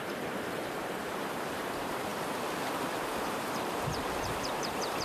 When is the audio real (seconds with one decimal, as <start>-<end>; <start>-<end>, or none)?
2.1-3.2